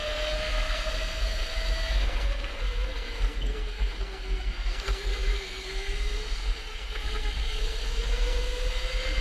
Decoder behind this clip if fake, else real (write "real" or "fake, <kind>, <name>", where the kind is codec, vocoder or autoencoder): fake, codec, SNAC